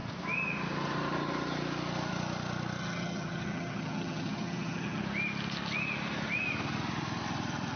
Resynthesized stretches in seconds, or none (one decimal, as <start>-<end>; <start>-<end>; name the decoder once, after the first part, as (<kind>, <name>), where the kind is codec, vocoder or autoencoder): 2.8-5.0 (vocoder, HiFi-GAN)